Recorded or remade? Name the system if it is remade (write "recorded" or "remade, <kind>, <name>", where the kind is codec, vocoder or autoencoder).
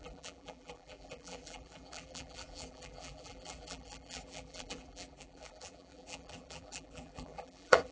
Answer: remade, vocoder, BigVGAN v2